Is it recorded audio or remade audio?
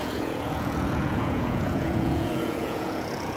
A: remade